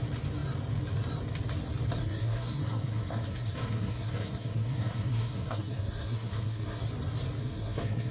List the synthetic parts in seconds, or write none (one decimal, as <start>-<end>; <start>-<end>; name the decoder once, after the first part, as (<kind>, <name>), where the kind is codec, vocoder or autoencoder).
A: 2.0-6.8 (codec, SNAC); 7.4-8.1